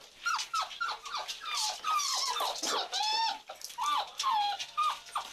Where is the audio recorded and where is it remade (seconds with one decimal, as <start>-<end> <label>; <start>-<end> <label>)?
0.0-5.3 recorded